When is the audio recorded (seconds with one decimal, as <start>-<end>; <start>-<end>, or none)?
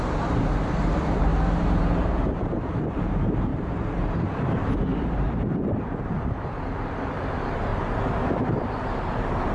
7.7-8.4